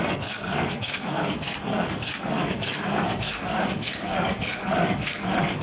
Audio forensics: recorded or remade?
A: remade